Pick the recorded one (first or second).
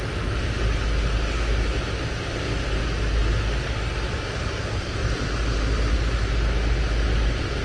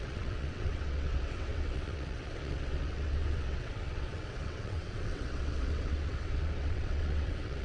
first